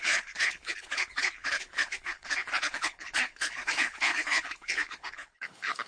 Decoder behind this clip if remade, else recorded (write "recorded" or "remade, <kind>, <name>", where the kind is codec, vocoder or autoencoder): remade, codec, HILCodec